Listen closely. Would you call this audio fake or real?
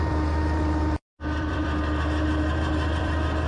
fake